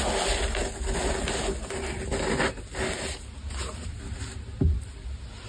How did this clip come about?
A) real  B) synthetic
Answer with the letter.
A